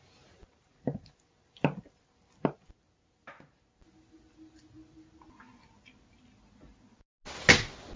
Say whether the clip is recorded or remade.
recorded